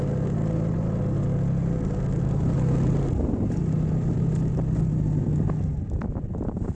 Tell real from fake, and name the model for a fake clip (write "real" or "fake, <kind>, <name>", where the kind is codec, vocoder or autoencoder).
real